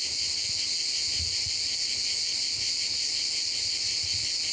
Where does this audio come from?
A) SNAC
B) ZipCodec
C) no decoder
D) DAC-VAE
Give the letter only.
C